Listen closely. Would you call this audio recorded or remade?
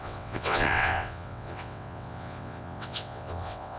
remade